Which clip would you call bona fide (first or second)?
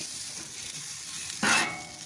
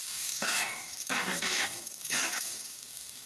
first